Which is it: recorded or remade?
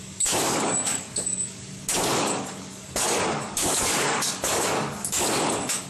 remade